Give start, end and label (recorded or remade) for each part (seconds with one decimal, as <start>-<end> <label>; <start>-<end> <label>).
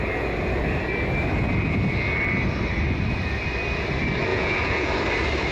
0.0-4.3 recorded; 4.3-4.9 remade; 4.9-5.5 recorded